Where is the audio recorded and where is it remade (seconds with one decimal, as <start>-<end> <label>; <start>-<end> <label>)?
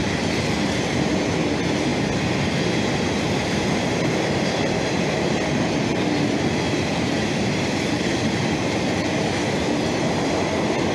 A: 0.0-5.9 recorded; 5.9-9.2 remade; 9.2-10.9 recorded